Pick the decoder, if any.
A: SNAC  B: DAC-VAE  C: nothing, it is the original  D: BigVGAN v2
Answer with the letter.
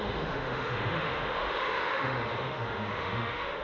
B